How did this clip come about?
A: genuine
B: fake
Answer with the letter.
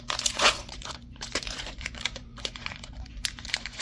B